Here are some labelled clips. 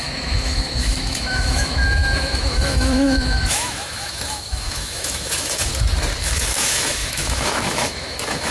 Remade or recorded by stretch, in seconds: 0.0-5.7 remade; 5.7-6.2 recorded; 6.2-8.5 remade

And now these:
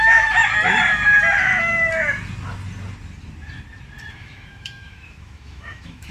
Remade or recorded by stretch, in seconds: 0.0-0.4 remade; 0.4-4.1 recorded; 4.1-6.1 remade

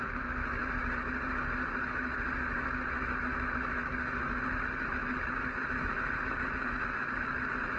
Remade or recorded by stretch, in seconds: 0.0-7.8 remade

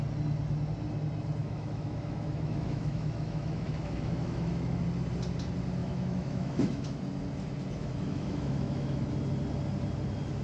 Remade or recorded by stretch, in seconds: 0.0-1.4 recorded; 1.4-4.8 remade; 4.8-5.8 recorded; 5.8-7.0 remade; 7.0-7.8 recorded; 7.8-9.1 remade; 9.1-10.4 recorded

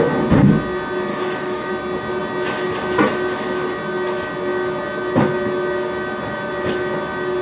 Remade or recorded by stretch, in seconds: 0.0-1.1 recorded; 1.1-1.7 remade; 1.7-7.4 recorded

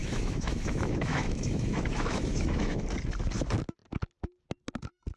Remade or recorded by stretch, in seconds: 0.0-2.8 remade; 2.8-5.2 recorded

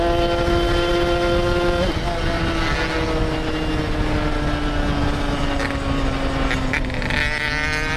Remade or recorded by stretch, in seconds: 0.0-8.0 recorded